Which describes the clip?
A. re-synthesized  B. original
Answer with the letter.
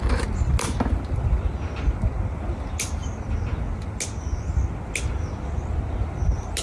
B